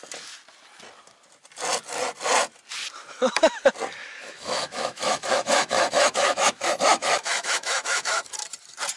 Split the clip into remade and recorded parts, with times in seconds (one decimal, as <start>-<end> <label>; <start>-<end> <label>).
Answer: 0.0-3.1 recorded; 3.1-3.6 remade; 3.6-4.0 recorded; 4.0-8.2 remade; 8.2-9.0 recorded